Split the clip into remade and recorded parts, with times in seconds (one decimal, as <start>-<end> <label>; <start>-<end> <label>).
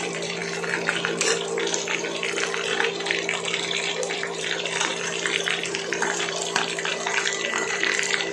0.0-0.4 remade; 0.4-3.9 recorded; 3.9-4.9 remade; 4.9-5.5 recorded; 5.5-6.9 remade; 6.9-7.5 recorded; 7.5-8.3 remade